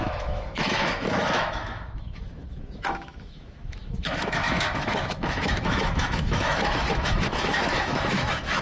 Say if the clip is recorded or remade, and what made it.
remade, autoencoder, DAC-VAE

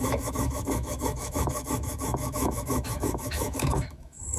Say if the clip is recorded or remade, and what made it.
remade, autoencoder, DAC-VAE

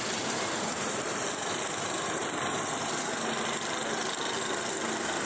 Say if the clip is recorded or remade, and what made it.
recorded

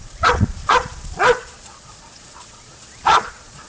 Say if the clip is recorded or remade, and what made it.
remade, vocoder, Vocos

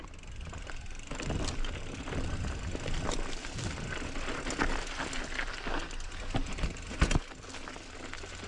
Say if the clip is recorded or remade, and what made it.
recorded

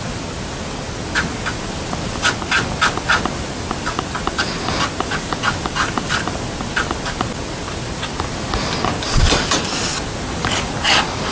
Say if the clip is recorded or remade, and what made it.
recorded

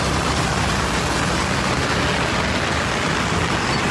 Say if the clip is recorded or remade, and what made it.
recorded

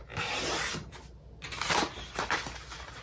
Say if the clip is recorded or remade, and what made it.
recorded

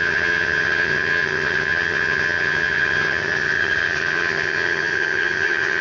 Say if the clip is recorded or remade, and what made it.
remade, vocoder, HiFi-GAN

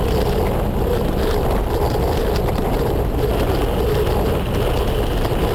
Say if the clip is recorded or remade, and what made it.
recorded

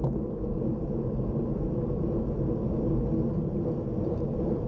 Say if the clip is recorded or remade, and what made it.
recorded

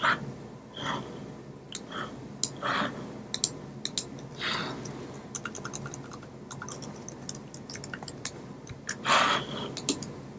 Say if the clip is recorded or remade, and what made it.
recorded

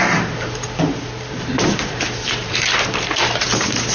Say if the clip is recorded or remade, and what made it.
remade, vocoder, BigVGAN v2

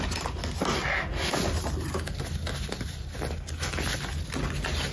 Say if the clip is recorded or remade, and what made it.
recorded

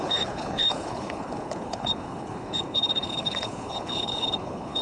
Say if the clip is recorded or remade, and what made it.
remade, codec, HILCodec